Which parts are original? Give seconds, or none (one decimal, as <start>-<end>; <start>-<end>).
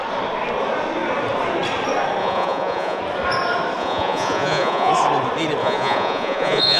0.0-2.2; 3.0-3.8; 4.9-5.6